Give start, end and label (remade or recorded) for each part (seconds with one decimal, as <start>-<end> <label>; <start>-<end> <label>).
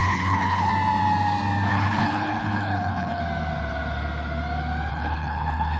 0.0-0.7 remade; 0.7-1.7 recorded; 1.7-3.2 remade; 3.2-4.9 recorded; 4.9-5.8 remade